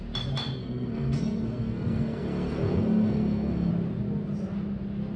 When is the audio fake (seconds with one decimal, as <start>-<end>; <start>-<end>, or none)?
0.6-3.7